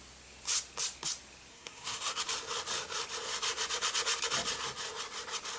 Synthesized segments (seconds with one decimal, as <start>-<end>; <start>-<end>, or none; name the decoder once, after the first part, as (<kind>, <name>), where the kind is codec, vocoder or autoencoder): 1.5-2.2 (codec, SNAC)